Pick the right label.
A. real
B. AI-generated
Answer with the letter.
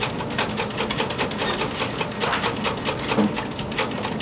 A